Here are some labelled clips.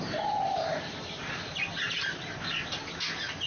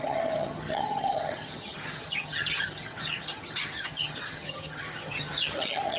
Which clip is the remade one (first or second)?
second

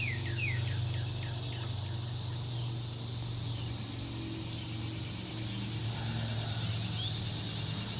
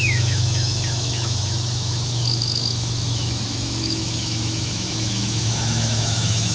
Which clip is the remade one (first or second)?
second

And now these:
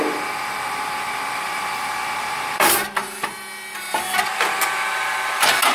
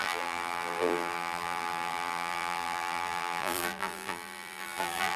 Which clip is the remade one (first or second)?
second